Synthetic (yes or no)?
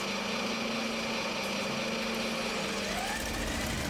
no